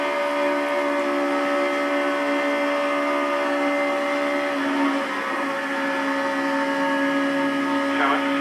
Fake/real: real